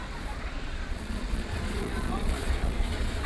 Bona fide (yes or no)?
no